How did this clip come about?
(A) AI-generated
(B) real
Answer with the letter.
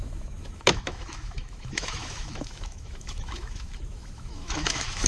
A